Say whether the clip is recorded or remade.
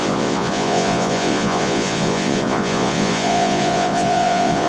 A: remade